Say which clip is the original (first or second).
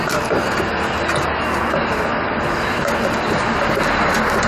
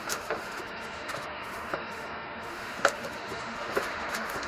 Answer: first